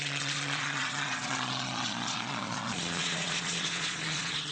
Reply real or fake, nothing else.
fake